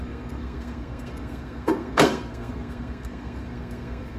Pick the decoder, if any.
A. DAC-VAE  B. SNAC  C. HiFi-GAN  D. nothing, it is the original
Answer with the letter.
B